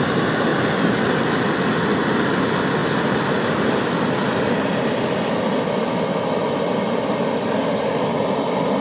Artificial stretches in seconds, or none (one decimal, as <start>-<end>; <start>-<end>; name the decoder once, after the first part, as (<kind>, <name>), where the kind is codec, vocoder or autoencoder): none